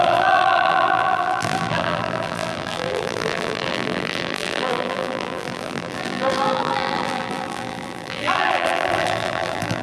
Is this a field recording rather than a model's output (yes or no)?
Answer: no